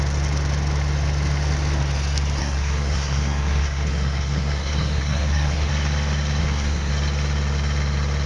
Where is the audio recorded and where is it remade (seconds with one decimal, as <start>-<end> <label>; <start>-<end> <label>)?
0.0-2.4 recorded; 2.4-5.7 remade; 5.7-6.4 recorded; 6.4-6.9 remade; 6.9-8.3 recorded